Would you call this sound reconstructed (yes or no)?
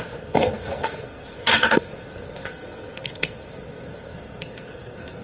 yes